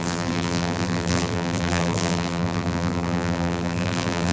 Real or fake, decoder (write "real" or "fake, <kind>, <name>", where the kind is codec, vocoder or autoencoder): fake, vocoder, BigVGAN v2